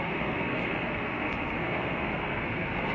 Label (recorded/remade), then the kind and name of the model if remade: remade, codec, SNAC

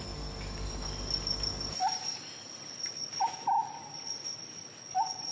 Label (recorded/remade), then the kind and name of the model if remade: recorded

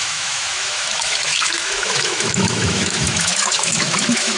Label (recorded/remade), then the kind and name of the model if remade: remade, autoencoder, DAC-VAE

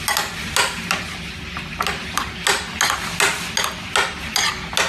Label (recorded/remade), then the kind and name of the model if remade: recorded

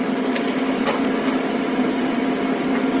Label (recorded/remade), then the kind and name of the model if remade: recorded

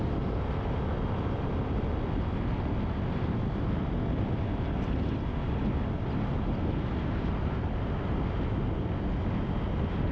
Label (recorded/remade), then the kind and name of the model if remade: recorded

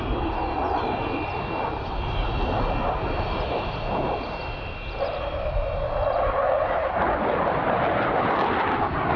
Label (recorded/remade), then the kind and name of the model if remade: recorded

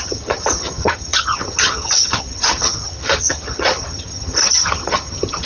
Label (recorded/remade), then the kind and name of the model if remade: remade, vocoder, HiFi-GAN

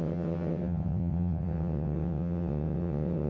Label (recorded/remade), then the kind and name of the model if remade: remade, vocoder, WaveNeXt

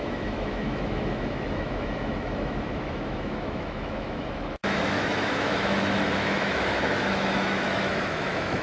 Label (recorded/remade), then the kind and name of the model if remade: remade, autoencoder, DAC-VAE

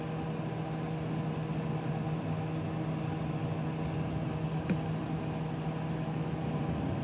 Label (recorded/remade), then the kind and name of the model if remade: recorded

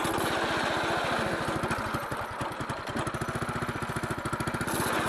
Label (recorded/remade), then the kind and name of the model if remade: recorded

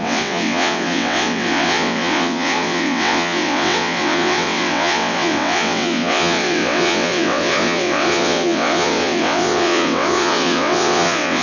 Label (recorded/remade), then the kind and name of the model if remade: remade, vocoder, WaveNeXt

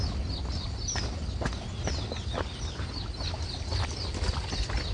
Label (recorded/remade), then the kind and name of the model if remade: recorded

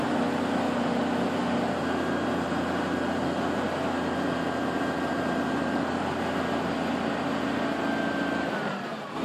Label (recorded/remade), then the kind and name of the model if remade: recorded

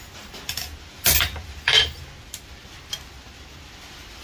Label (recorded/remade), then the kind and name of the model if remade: recorded